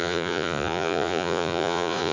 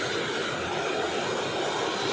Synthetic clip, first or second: first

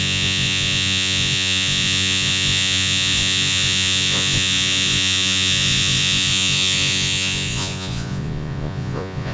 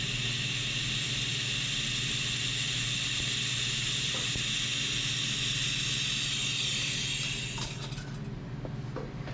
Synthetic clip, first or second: first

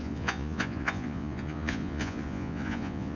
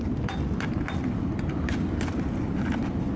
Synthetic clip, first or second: first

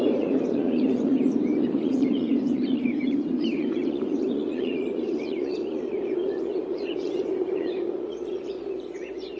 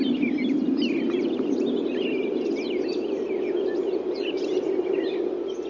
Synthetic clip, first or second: first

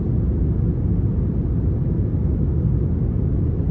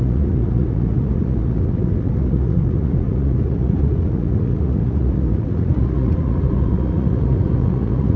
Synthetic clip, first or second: second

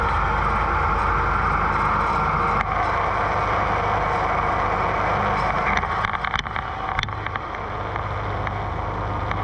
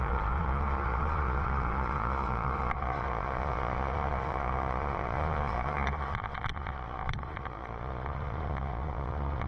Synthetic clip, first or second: second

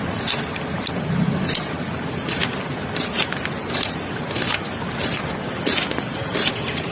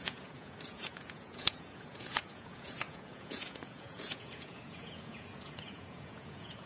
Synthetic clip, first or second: second